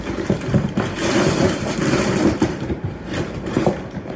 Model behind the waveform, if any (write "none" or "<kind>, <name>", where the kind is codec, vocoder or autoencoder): vocoder, BigVGAN v2